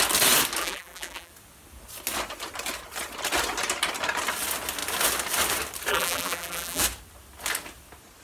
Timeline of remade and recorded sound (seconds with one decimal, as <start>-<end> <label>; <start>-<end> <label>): 0.0-0.6 recorded; 0.6-1.3 remade; 1.3-5.9 recorded; 5.9-6.8 remade; 6.8-8.2 recorded